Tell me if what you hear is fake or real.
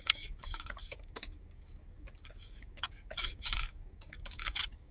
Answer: fake